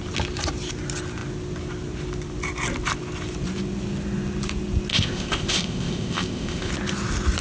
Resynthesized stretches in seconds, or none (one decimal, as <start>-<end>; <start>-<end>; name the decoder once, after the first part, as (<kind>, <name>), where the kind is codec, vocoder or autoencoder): 4.9-6.7 (codec, ZipCodec)